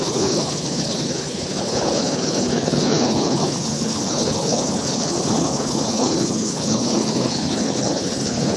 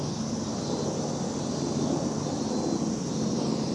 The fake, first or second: first